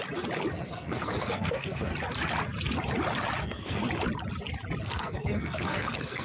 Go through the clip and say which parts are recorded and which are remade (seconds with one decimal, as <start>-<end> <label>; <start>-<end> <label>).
0.0-0.5 recorded; 0.5-1.9 remade; 1.9-3.4 recorded; 3.4-3.8 remade; 3.8-4.8 recorded; 4.8-6.2 remade